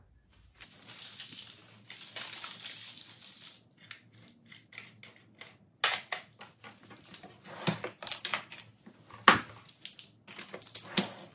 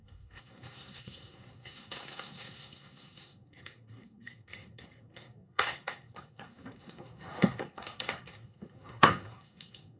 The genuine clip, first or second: first